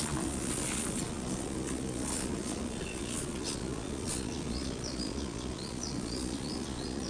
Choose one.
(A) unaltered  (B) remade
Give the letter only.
B